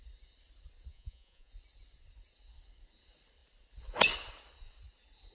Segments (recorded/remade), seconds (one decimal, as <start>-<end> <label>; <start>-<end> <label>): 0.0-0.9 recorded; 0.9-1.5 remade; 1.5-5.3 recorded